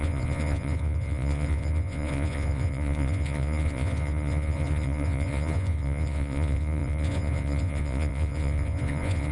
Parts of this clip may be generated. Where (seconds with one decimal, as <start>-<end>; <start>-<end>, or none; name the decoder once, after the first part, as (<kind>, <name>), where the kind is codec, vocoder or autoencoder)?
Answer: 0.0-9.3 (vocoder, Vocos)